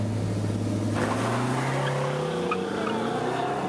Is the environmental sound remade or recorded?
recorded